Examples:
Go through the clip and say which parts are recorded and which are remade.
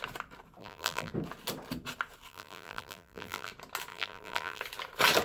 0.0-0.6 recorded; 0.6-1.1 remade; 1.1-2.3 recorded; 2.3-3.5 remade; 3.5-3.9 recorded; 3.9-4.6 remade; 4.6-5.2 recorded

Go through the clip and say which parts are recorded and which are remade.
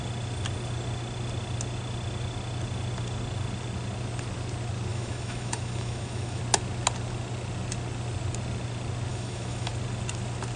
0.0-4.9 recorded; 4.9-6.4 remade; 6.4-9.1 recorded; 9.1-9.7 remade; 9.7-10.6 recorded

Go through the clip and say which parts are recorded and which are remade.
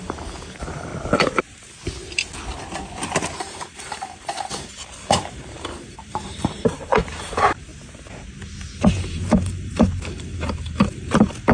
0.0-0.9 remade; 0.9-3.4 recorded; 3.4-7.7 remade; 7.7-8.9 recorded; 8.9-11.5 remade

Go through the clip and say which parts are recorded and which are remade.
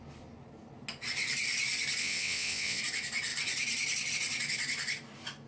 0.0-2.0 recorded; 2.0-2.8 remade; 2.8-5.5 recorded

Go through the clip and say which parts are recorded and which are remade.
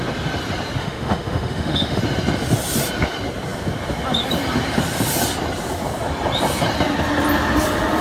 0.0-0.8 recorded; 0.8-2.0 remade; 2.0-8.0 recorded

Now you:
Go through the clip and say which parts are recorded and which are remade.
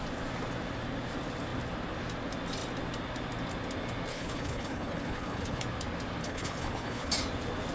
0.0-4.1 recorded; 4.1-5.6 remade; 5.6-6.2 recorded; 6.2-7.1 remade; 7.1-7.7 recorded